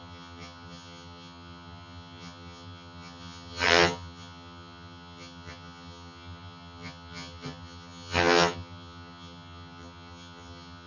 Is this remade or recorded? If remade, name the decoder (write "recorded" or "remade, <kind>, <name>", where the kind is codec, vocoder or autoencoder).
remade, vocoder, HiFi-GAN